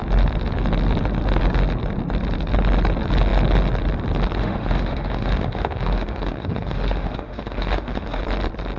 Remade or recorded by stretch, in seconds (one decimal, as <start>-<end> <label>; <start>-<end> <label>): 0.0-4.4 recorded; 4.4-8.2 remade; 8.2-8.8 recorded